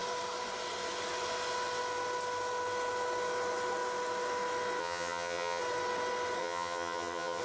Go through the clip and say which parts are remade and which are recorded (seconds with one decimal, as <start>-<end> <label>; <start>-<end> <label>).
0.0-4.8 recorded; 4.8-5.6 remade; 5.6-6.4 recorded; 6.4-7.4 remade